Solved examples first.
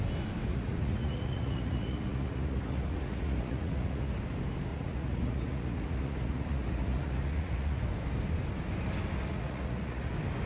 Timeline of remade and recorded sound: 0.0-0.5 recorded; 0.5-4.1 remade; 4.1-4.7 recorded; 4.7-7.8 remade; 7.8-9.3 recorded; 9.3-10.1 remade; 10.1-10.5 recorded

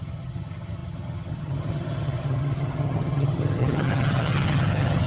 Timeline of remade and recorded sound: 0.0-5.1 remade

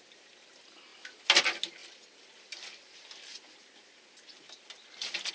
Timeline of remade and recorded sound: 0.0-5.3 recorded

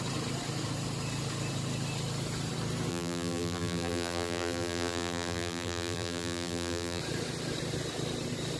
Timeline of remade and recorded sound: 0.0-2.9 recorded; 2.9-7.0 remade; 7.0-8.6 recorded

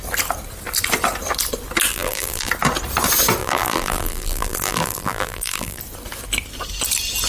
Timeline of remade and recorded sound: 0.0-1.9 recorded; 1.9-2.5 remade; 2.5-3.4 recorded; 3.4-5.8 remade; 5.8-7.3 recorded

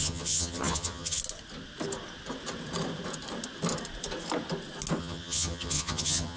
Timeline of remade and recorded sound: 0.0-1.2 remade; 1.2-5.0 recorded; 5.0-6.4 remade

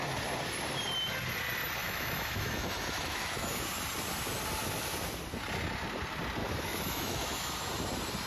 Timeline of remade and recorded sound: 0.0-1.8 recorded; 1.8-3.6 remade; 3.6-6.4 recorded; 6.4-7.5 remade; 7.5-8.3 recorded

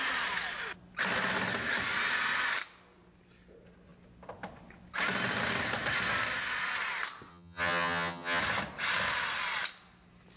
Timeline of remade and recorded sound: 0.0-7.3 recorded; 7.3-8.4 remade; 8.4-10.4 recorded